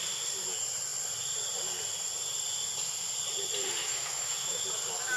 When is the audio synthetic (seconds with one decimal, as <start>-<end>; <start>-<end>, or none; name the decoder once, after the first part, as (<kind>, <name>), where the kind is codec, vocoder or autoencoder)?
3.8-4.6 (autoencoder, DAC-VAE)